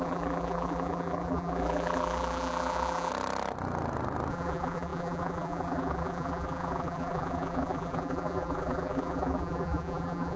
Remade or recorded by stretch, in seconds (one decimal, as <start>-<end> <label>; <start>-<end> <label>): 0.0-3.1 remade; 3.1-4.3 recorded; 4.3-10.4 remade